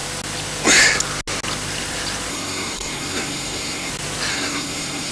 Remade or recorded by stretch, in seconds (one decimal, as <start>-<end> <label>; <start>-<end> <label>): 0.0-2.3 recorded; 2.3-3.9 remade; 3.9-4.3 recorded; 4.3-5.1 remade